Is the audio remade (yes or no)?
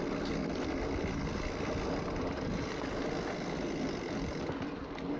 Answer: no